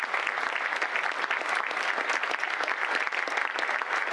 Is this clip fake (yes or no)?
no